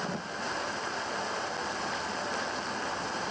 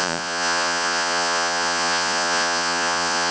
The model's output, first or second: second